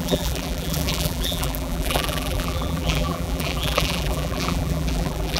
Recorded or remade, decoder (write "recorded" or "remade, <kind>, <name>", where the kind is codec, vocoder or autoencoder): remade, vocoder, BigVGAN v2